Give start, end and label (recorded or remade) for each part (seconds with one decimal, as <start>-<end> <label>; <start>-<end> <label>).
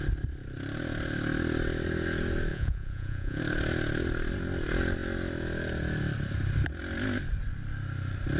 0.0-2.5 recorded; 2.5-3.4 remade; 3.4-8.4 recorded